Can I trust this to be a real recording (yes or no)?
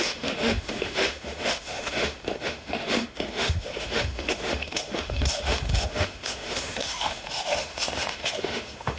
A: no